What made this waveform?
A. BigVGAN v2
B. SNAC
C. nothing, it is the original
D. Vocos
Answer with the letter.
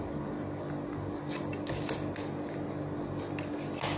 C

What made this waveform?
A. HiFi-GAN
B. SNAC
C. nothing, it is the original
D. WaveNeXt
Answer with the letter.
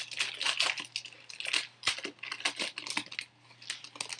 C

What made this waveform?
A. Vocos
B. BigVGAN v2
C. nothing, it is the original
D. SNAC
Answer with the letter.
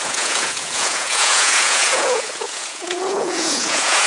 A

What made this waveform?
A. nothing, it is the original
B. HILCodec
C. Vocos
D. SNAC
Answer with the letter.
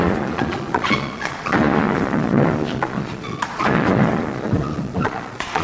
C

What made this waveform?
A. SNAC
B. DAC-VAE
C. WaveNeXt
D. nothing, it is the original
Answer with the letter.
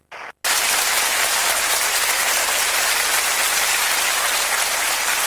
D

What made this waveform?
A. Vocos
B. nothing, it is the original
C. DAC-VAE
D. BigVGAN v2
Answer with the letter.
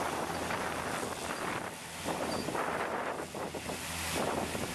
B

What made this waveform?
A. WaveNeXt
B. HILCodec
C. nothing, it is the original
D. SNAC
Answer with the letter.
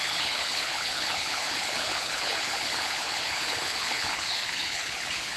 B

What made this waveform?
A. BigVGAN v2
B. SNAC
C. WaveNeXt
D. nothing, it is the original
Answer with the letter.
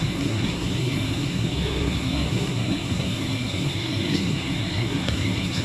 B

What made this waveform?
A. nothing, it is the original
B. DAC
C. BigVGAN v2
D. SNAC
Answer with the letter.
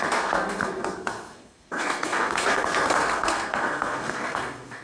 D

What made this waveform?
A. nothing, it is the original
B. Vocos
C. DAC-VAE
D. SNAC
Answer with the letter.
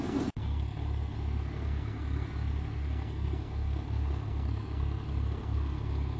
D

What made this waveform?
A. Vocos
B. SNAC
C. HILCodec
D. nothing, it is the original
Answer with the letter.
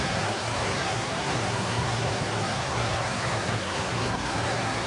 B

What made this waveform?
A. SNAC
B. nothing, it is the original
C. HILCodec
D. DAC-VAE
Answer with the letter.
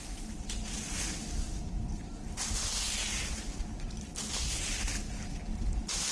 B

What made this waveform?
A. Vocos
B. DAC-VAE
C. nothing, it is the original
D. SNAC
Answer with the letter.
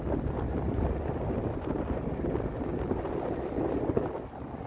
C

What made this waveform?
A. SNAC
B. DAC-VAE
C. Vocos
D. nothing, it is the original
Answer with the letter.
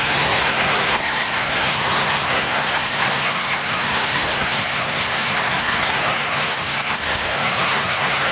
A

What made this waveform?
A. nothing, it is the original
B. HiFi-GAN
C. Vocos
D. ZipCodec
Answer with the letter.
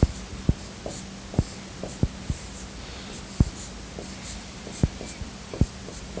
A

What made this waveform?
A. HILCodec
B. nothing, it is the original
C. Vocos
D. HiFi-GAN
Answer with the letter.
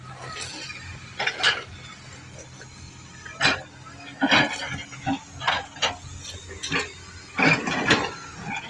B